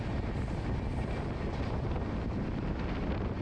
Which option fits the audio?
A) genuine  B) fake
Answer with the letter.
A